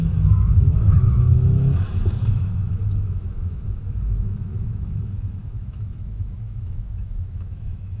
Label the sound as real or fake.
fake